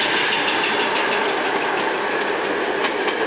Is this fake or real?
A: real